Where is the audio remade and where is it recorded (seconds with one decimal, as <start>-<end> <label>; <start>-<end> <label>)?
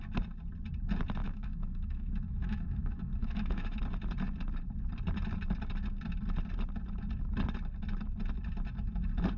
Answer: 0.0-1.2 recorded; 1.2-3.8 remade; 3.8-9.4 recorded